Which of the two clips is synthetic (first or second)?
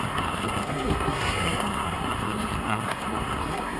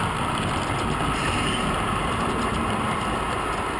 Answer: first